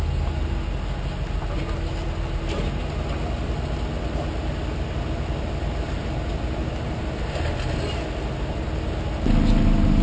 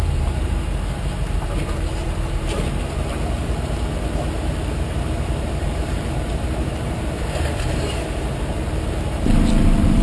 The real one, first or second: first